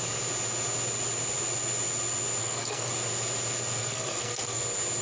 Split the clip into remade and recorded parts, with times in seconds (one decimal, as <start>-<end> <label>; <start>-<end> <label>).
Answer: 0.0-2.4 recorded; 2.4-2.9 remade; 2.9-3.8 recorded; 3.8-4.6 remade; 4.6-5.0 recorded